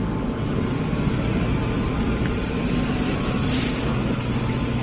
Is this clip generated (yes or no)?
no